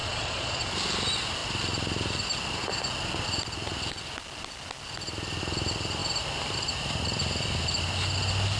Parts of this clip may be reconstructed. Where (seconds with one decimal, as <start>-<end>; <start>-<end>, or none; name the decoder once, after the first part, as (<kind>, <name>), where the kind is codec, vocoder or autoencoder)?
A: 0.0-0.7 (vocoder, Vocos)